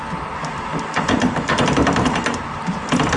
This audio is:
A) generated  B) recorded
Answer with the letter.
A